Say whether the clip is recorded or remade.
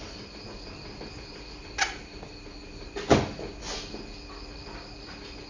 recorded